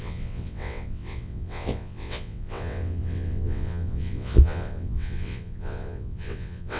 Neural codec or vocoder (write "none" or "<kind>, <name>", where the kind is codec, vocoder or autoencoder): vocoder, WaveNeXt